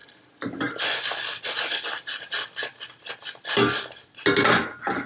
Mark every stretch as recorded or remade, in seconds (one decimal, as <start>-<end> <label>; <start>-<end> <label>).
0.0-5.1 recorded